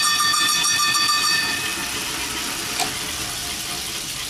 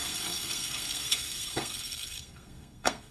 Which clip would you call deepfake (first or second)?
second